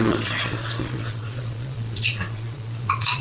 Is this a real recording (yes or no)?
no